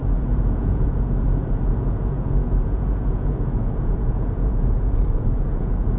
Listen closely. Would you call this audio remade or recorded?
remade